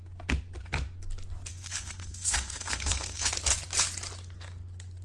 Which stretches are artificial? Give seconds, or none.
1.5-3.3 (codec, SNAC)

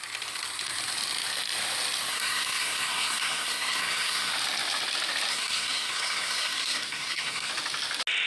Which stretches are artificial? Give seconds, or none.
2.1-4.3 (codec, SNAC); 5.3-7.5

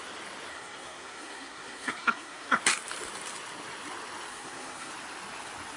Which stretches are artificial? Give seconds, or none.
0.5-2.6 (codec, SNAC); 4.3-4.9

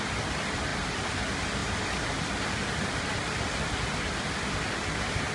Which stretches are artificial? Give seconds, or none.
none

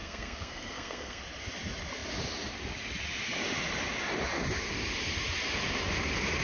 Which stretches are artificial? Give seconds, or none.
0.0-1.2 (codec, SNAC)